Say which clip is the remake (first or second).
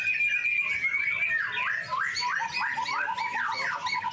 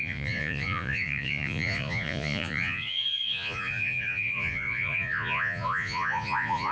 second